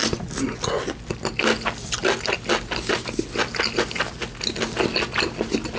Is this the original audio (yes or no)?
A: yes